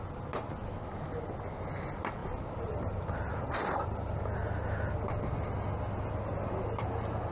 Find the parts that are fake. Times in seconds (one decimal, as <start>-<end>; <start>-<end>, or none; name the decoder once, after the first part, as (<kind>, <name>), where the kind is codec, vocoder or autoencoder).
2.2-4.2 (vocoder, BigVGAN v2)